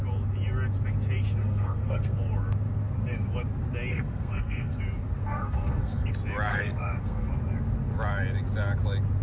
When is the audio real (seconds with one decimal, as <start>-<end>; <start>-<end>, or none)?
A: 0.0-1.4; 2.2-3.9; 4.8-5.2; 6.1-6.5; 7.3-9.2